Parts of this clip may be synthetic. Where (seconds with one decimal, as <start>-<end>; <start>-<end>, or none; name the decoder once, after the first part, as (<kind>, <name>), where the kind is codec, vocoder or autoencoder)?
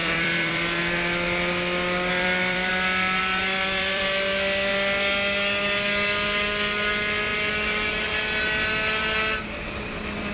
0.0-0.8 (vocoder, BigVGAN v2); 2.1-2.7; 3.2-4.0